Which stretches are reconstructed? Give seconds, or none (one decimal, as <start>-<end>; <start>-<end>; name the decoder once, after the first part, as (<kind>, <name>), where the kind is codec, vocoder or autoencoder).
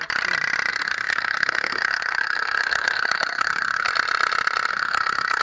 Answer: 0.7-3.9 (codec, SNAC); 4.7-5.4